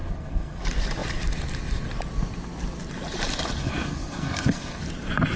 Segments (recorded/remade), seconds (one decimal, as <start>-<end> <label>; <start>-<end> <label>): 0.0-0.6 remade; 0.6-3.6 recorded; 3.6-4.8 remade; 4.8-5.4 recorded